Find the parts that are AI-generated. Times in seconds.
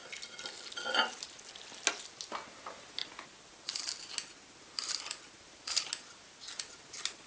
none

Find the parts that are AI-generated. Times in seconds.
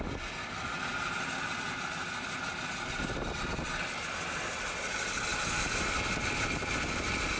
none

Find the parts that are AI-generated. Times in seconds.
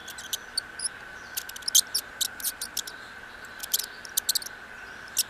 none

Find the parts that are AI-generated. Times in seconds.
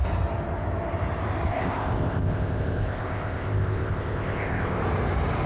1.5-4.8 (codec, ZipCodec)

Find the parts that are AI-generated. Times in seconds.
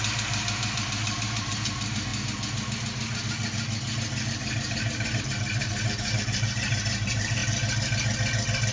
0.0-2.1 (vocoder, BigVGAN v2); 5.2-7.4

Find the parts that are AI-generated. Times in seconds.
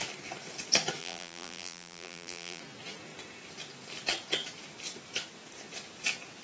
1.0-2.6 (vocoder, BigVGAN v2)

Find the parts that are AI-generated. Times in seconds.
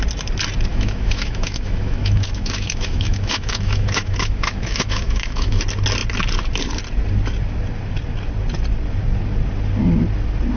0.7-5.6 (autoencoder, DAC-VAE)